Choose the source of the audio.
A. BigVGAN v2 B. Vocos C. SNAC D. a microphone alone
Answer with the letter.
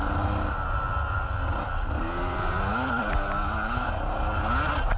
D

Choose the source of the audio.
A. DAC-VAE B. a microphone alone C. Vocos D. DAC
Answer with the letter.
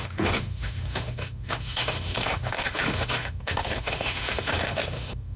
A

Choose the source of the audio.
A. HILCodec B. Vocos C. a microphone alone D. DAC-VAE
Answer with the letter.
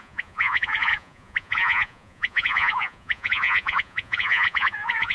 B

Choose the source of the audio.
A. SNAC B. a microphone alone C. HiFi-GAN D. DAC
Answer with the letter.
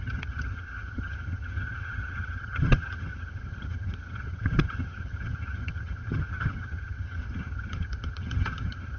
C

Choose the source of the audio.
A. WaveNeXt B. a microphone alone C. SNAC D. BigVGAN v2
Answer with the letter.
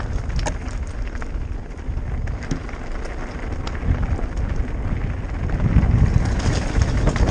B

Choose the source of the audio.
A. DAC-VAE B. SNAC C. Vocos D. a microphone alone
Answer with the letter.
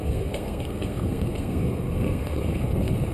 B